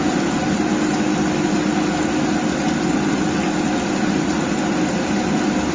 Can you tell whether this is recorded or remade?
recorded